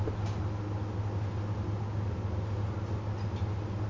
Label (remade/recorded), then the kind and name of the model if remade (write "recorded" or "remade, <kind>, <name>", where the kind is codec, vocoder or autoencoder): recorded